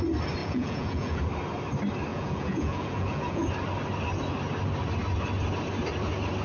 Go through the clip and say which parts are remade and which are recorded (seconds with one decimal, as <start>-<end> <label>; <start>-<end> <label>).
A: 0.0-0.4 recorded; 0.4-1.2 remade; 1.2-2.1 recorded; 2.1-3.5 remade; 3.5-6.4 recorded